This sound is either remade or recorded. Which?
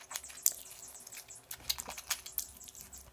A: recorded